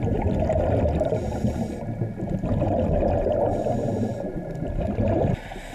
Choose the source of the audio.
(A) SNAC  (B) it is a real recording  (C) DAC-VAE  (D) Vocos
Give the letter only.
B